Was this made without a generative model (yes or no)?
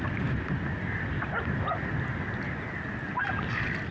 yes